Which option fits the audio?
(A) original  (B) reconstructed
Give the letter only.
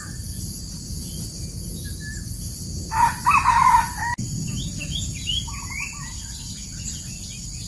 A